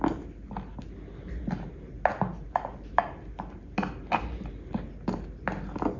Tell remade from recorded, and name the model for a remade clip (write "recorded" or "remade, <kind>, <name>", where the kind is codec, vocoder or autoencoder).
recorded